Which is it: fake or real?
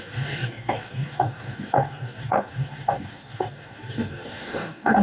fake